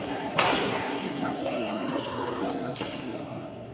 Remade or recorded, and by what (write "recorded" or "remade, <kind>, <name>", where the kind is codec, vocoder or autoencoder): remade, codec, SNAC